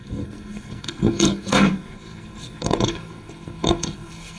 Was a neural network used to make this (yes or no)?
yes